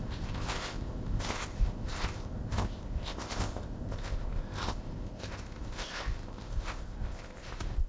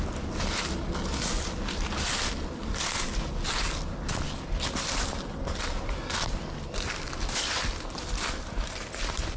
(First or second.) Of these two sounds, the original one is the second